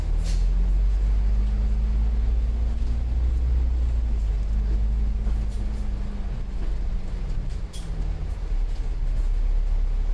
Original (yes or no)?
yes